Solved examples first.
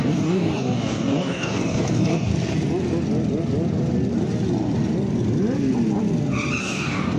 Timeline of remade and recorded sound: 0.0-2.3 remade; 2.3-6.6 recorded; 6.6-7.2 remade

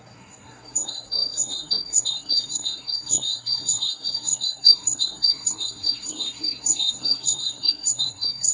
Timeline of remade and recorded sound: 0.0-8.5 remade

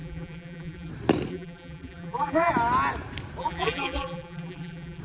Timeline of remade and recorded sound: 0.0-0.9 remade; 0.9-1.3 recorded; 1.3-2.5 remade; 2.5-3.4 recorded; 3.4-5.0 remade

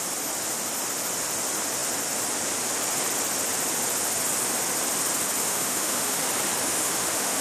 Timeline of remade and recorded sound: 0.0-5.4 recorded; 5.4-6.2 remade; 6.2-6.7 recorded; 6.7-7.4 remade